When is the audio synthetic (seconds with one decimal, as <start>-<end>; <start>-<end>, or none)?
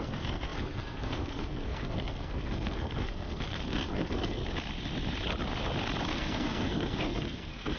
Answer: 0.0-4.4; 6.1-7.8